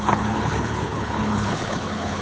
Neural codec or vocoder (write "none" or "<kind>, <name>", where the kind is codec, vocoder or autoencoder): codec, HILCodec